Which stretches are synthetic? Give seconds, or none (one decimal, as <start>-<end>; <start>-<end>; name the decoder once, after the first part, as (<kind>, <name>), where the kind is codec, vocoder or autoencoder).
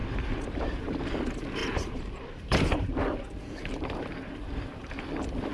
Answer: 0.0-1.0 (vocoder, BigVGAN v2); 1.6-4.9